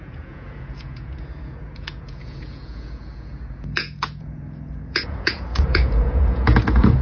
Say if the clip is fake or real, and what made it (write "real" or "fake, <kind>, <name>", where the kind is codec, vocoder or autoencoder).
fake, vocoder, Vocos